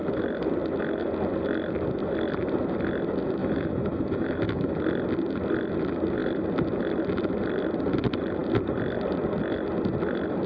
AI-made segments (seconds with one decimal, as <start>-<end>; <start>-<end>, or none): 3.4-4.7